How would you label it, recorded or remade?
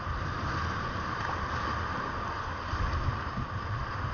recorded